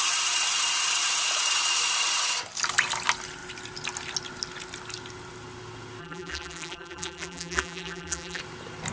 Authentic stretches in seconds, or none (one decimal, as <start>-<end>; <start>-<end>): 0.0-6.0; 8.4-8.9

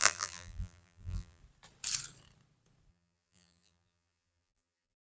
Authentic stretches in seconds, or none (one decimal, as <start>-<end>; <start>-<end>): 1.4-2.9

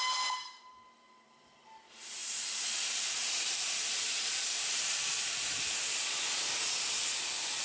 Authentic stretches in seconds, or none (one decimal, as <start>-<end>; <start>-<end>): 0.0-2.2; 6.0-7.6

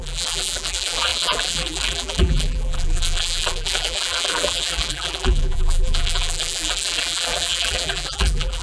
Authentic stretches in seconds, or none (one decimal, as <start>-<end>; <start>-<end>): none

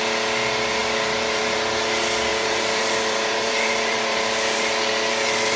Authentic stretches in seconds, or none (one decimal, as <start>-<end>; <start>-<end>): 0.0-2.3; 4.7-5.6

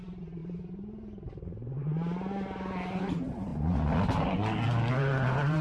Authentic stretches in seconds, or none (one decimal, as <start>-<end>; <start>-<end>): 0.4-3.0; 3.5-4.9